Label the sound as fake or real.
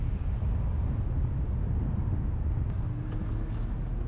real